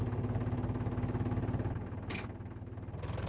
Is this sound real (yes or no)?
yes